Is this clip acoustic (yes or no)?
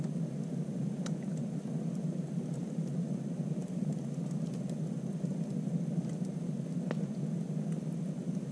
yes